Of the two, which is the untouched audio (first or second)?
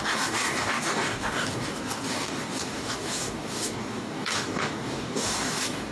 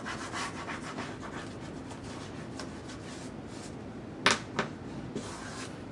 second